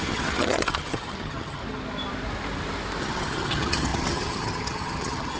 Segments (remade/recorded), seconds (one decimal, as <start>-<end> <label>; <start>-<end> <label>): 0.0-1.6 remade; 1.6-3.0 recorded; 3.0-5.4 remade